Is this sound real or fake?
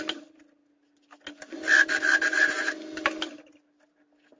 real